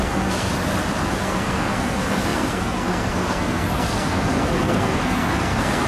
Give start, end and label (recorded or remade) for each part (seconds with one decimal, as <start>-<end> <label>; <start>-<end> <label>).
0.0-0.5 remade; 0.5-1.0 recorded; 1.0-5.9 remade